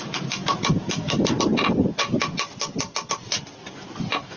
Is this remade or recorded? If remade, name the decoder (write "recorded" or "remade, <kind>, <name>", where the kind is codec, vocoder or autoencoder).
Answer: recorded